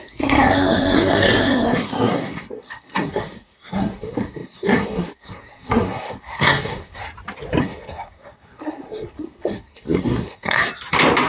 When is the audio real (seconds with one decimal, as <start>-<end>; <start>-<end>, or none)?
7.0-7.6; 10.6-11.3